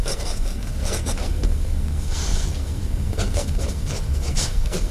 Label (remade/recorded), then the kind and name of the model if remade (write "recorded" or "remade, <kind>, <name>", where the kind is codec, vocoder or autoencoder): remade, codec, SNAC